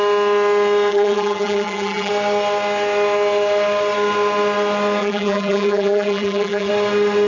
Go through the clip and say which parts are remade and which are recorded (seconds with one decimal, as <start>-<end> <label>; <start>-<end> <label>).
0.0-0.9 recorded; 0.9-2.1 remade; 2.1-5.0 recorded; 5.0-6.7 remade; 6.7-7.3 recorded